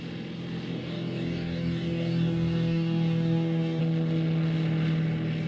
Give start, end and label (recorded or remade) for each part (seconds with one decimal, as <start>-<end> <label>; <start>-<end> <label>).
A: 0.0-0.7 recorded; 0.7-3.8 remade; 3.8-5.5 recorded